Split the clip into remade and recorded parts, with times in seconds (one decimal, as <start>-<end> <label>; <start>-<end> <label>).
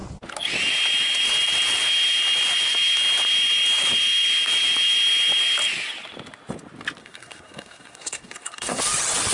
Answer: 0.0-7.0 recorded; 7.0-8.8 remade; 8.8-9.3 recorded